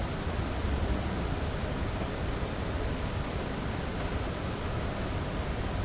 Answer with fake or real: real